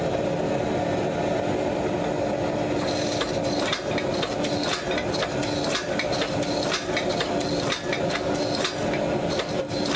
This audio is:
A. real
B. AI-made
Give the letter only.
A